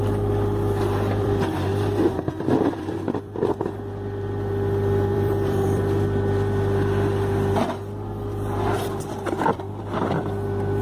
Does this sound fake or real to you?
fake